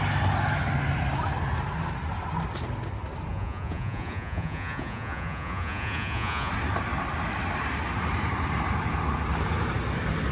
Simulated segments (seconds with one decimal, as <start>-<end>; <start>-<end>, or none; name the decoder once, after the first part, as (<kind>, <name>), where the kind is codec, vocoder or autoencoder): 3.3-6.5 (vocoder, Vocos)